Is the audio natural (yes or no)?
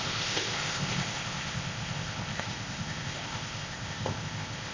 no